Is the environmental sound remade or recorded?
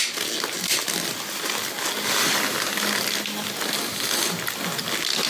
recorded